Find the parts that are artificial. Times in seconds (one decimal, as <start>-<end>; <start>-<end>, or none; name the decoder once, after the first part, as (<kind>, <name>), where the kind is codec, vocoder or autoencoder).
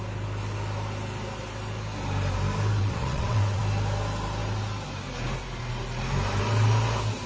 2.8-3.6 (vocoder, WaveNeXt)